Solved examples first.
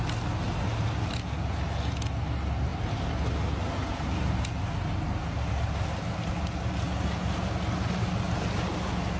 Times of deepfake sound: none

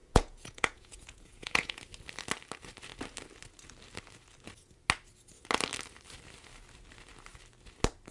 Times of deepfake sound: 0.0-1.8 (vocoder, Vocos)